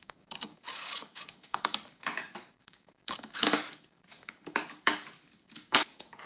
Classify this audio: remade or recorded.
remade